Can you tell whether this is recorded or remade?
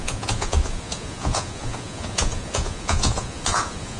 remade